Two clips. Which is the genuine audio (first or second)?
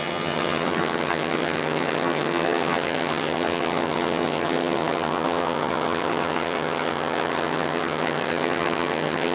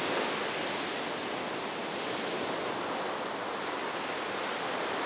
second